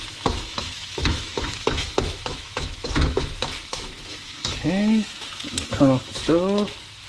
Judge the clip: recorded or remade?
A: remade